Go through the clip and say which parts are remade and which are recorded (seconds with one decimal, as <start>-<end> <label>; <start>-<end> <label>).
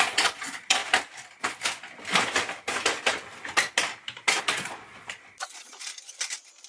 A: 0.0-0.8 remade; 0.8-4.4 recorded; 4.4-5.8 remade; 5.8-6.7 recorded